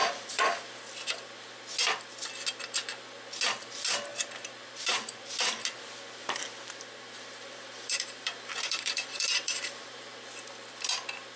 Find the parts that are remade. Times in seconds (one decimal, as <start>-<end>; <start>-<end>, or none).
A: 0.0-0.7; 6.2-10.0